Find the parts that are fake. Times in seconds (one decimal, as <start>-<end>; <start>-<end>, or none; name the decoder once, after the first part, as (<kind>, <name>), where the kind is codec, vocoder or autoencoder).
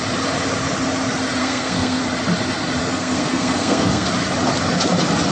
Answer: 1.4-2.0 (codec, SNAC); 2.8-4.1